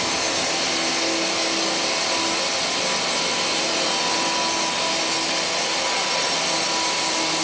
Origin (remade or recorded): recorded